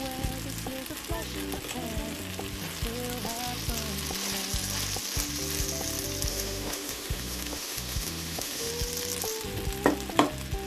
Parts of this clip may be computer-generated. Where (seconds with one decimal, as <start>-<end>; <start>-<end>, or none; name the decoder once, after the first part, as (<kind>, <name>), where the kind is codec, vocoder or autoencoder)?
6.3-8.7 (autoencoder, DAC-VAE)